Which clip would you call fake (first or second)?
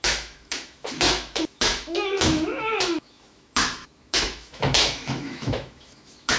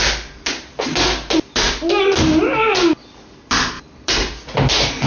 first